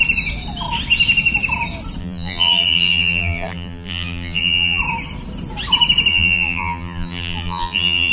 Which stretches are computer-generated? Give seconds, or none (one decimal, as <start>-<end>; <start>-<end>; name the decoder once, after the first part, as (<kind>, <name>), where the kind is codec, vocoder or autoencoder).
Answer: 2.0-4.8 (vocoder, BigVGAN v2); 6.1-8.1